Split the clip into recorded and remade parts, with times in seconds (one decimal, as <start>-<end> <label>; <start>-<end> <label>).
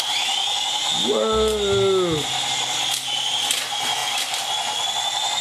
0.0-4.0 recorded; 4.0-5.4 remade